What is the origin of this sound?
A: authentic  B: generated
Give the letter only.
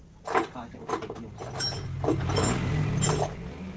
A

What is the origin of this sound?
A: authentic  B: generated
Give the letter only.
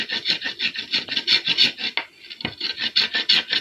A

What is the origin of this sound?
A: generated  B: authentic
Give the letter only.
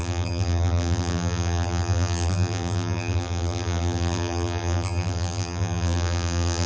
A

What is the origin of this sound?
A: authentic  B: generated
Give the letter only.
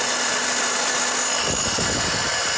A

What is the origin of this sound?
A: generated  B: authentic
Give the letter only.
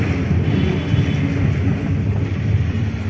A